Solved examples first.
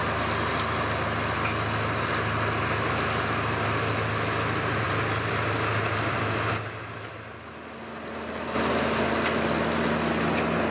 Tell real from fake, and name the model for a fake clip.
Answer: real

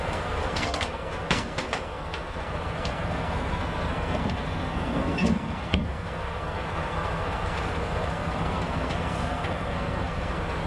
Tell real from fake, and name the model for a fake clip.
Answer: fake, codec, SNAC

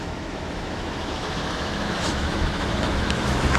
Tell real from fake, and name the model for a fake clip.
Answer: fake, autoencoder, DAC-VAE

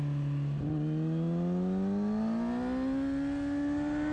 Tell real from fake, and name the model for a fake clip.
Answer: real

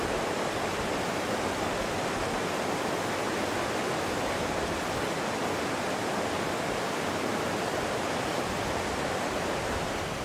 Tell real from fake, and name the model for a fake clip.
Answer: real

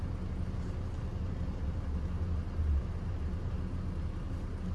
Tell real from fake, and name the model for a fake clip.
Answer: real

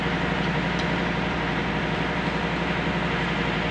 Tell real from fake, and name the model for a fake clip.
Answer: real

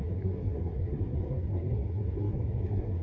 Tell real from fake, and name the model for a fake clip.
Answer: fake, codec, SNAC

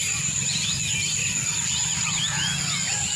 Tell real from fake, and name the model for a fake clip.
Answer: real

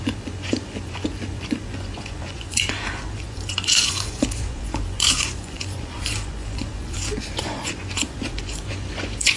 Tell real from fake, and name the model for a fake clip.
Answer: fake, vocoder, Vocos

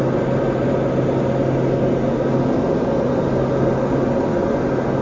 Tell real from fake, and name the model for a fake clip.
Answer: real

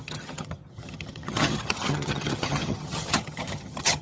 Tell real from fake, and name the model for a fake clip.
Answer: fake, vocoder, HiFi-GAN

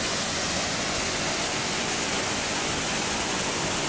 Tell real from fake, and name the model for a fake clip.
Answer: fake, vocoder, Vocos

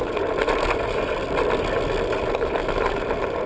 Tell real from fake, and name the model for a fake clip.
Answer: real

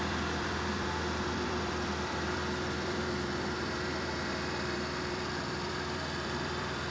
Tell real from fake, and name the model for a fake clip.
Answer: fake, vocoder, BigVGAN v2